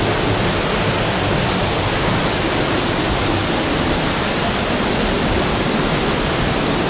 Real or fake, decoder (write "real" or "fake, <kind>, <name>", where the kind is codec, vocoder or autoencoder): real